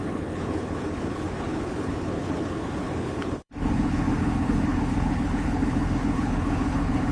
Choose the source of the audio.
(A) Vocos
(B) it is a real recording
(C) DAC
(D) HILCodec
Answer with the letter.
D